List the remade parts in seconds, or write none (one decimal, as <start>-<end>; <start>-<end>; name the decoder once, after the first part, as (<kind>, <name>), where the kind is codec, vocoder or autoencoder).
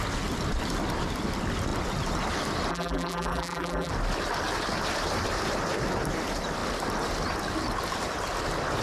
2.7-3.9 (vocoder, BigVGAN v2)